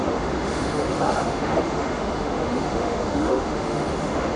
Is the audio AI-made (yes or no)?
yes